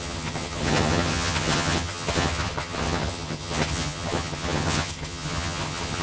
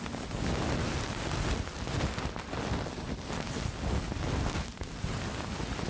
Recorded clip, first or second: second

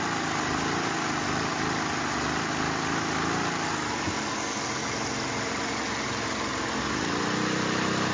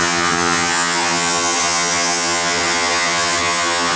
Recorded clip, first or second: first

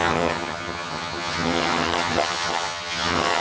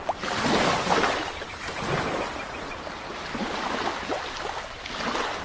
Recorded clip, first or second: second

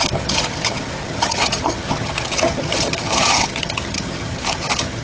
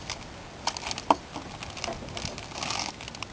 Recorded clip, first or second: second